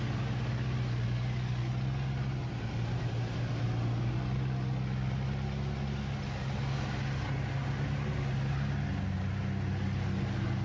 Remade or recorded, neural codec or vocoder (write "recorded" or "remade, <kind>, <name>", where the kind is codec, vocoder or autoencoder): recorded